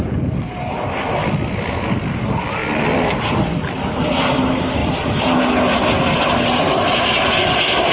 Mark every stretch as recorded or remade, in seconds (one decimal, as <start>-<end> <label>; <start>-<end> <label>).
0.0-7.9 recorded